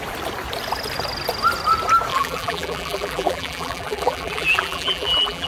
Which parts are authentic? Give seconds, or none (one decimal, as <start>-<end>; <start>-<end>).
0.0-2.1